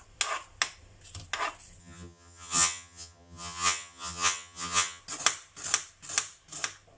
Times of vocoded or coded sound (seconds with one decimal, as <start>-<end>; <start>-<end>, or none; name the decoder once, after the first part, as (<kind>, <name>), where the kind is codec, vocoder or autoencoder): 1.8-5.0 (vocoder, HiFi-GAN)